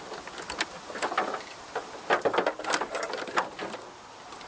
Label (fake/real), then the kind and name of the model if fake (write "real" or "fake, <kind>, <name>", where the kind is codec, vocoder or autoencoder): real